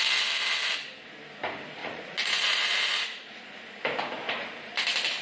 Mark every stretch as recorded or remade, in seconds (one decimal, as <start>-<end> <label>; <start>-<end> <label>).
0.0-1.8 recorded; 1.8-3.4 remade; 3.4-5.2 recorded